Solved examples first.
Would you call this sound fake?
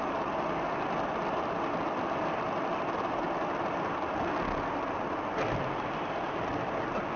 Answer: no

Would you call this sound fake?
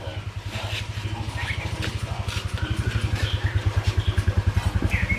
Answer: no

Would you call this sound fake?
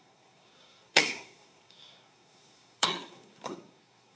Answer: yes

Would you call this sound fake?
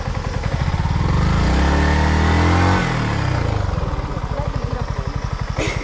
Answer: no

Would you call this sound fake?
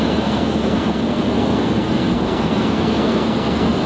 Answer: yes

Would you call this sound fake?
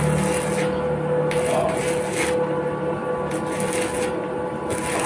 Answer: no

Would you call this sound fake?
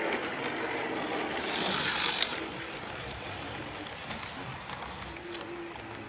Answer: no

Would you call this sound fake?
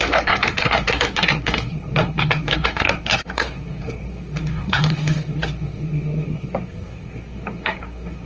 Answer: yes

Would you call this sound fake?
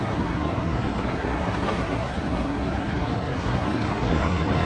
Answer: yes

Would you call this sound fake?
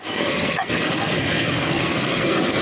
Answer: yes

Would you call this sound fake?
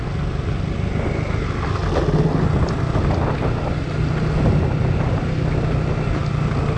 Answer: no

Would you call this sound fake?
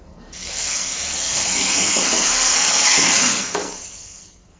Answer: yes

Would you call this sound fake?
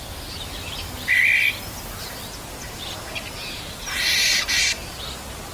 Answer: no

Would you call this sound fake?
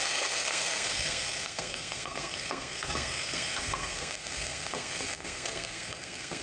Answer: yes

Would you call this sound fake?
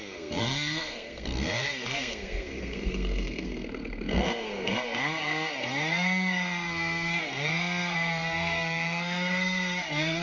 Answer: yes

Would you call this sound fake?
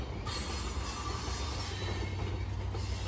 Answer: no